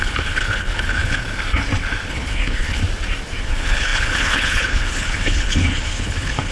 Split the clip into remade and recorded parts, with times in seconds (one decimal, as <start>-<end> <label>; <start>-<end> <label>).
0.0-1.2 remade; 1.2-2.1 recorded; 2.1-2.8 remade; 2.8-3.4 recorded; 3.4-6.5 remade